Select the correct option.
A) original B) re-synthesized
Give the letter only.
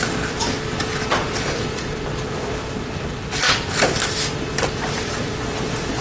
A